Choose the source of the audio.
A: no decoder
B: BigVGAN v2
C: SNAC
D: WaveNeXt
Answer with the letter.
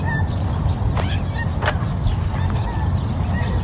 A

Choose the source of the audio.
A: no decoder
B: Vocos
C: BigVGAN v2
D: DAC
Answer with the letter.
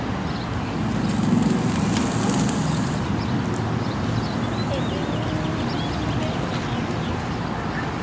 A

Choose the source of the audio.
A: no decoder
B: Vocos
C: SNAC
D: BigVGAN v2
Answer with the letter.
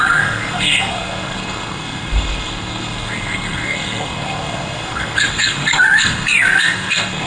C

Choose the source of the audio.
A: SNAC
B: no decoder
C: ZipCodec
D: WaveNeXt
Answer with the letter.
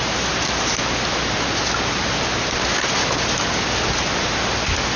B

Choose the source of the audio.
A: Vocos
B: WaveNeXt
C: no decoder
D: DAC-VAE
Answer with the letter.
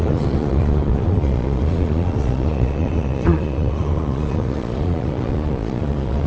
A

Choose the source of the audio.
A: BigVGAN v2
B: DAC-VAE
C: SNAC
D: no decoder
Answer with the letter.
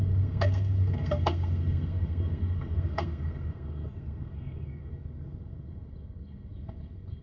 C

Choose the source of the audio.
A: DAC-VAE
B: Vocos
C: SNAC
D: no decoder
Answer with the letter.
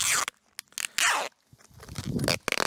D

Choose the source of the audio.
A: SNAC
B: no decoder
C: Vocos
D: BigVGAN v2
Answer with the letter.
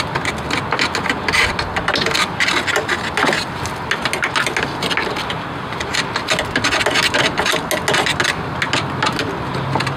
B